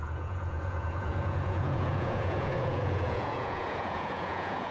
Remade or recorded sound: remade